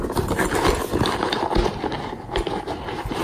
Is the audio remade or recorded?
recorded